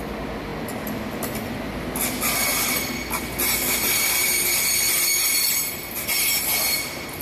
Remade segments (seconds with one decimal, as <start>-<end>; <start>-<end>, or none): 4.2-7.2